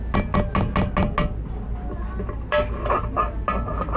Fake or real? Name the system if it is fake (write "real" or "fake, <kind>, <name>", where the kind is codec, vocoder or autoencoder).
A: real